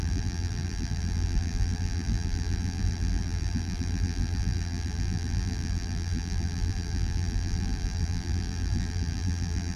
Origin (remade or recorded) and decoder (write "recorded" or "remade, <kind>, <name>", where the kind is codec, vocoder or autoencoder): remade, vocoder, BigVGAN v2